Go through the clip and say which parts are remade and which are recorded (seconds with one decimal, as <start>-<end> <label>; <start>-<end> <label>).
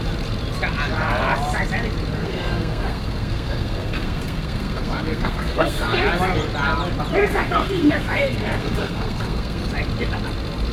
0.0-2.2 recorded; 2.2-6.0 remade; 6.0-7.2 recorded; 7.2-9.7 remade; 9.7-10.7 recorded